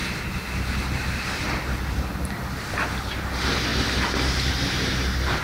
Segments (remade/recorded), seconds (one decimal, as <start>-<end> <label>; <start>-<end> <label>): 0.0-2.1 remade; 2.1-3.7 recorded; 3.7-4.5 remade; 4.5-5.4 recorded